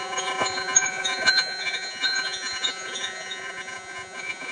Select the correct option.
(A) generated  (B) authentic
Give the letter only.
A